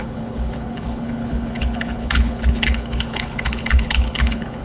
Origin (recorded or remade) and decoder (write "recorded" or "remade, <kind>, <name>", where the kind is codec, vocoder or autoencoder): remade, codec, HILCodec